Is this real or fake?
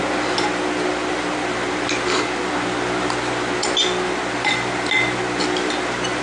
real